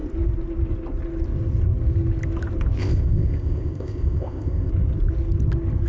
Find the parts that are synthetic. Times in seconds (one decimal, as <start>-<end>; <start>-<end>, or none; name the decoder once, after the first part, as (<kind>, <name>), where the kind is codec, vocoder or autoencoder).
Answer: 2.8-4.7 (codec, ZipCodec)